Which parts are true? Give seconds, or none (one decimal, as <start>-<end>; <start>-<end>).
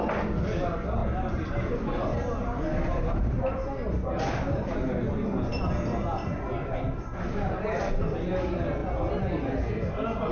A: 0.0-10.3